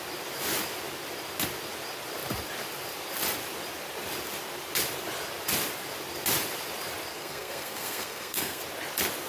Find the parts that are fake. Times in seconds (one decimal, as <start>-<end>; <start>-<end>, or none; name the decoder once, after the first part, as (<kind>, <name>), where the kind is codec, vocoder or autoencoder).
7.1-8.6 (codec, SNAC)